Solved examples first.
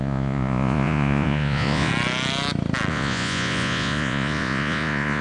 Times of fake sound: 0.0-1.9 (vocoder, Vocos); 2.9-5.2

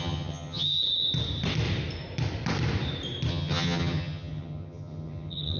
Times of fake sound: 0.0-0.8 (vocoder, HiFi-GAN); 3.3-5.6

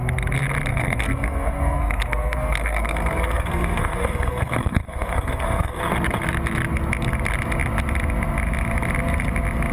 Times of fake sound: 0.7-5.8 (codec, SNAC)